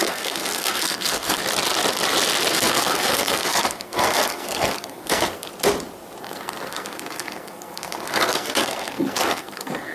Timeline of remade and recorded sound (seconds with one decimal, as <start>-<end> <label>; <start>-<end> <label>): 0.0-1.4 remade; 1.4-2.5 recorded; 2.5-5.5 remade; 5.5-6.2 recorded; 6.2-9.9 remade